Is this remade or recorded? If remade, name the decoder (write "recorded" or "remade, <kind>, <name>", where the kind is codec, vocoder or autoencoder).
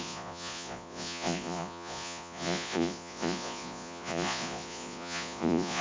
remade, vocoder, Vocos